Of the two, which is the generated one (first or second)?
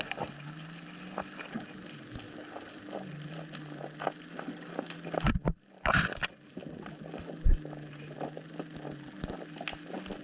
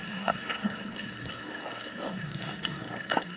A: second